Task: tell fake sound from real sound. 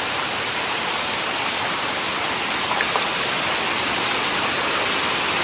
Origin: real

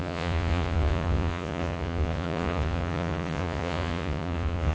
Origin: fake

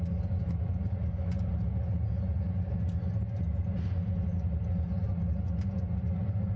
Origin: real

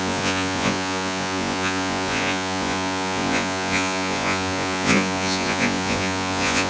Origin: fake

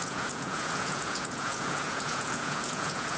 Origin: fake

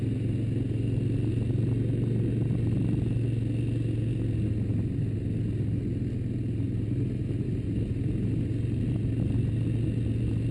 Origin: real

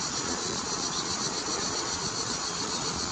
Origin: fake